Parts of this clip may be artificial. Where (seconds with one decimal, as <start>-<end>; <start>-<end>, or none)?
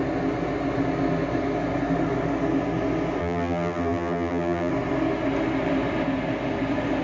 3.2-4.7